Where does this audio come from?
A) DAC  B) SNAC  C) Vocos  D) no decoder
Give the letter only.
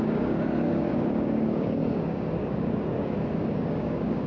A